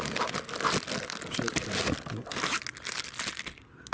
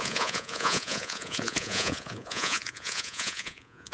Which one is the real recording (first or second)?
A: first